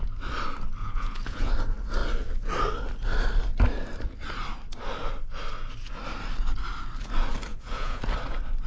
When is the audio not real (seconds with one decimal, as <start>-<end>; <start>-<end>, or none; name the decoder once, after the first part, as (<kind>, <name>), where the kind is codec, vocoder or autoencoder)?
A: 0.8-1.5 (vocoder, Vocos); 7.5-8.0